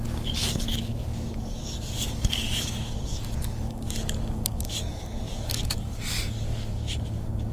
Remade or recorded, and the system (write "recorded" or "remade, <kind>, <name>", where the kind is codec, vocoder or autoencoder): remade, codec, DAC